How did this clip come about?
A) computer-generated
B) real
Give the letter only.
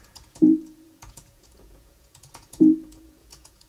A